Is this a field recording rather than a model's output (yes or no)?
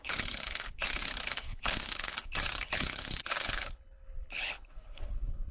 no